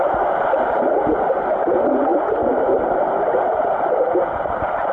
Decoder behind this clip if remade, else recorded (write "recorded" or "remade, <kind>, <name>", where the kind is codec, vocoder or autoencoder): recorded